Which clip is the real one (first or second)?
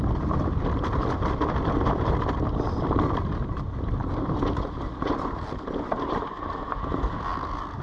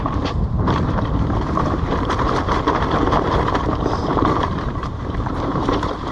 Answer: first